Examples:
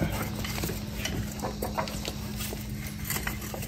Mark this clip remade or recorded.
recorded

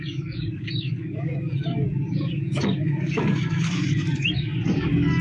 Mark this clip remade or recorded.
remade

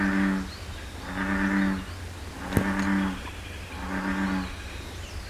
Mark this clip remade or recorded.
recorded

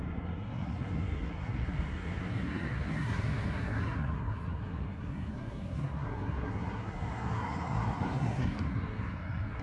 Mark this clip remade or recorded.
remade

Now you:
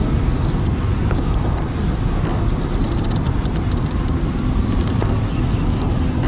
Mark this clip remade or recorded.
recorded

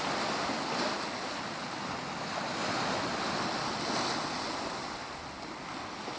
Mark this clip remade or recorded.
recorded